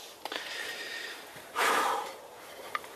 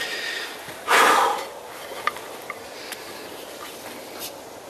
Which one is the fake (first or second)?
first